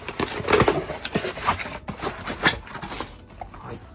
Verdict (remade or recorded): recorded